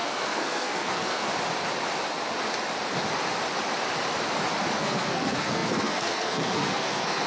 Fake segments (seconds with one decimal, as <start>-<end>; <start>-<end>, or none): 0.0-1.3; 4.8-7.3